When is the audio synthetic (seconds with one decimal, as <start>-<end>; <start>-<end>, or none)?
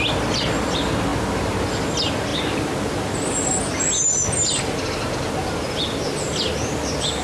none